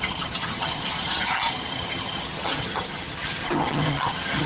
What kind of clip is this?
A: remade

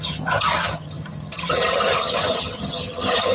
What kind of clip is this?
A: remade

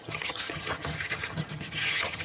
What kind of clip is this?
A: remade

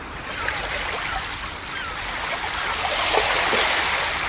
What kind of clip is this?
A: recorded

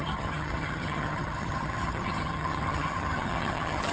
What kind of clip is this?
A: remade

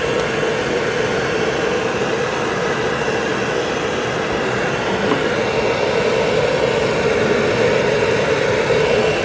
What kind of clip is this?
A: recorded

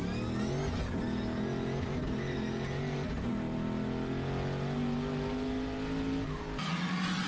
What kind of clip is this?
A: recorded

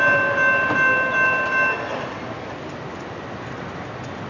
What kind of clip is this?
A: recorded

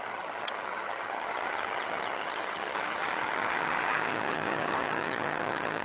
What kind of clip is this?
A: remade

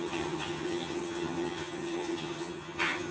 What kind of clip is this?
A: remade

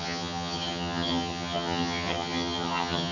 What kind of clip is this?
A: remade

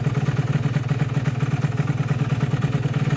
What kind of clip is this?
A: recorded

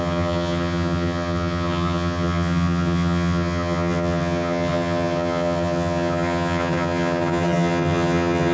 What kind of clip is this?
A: remade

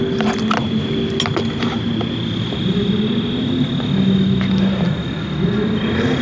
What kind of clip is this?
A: recorded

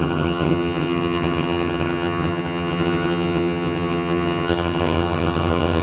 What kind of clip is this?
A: remade